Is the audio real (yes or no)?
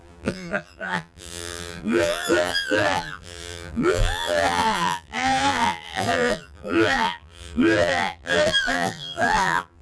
no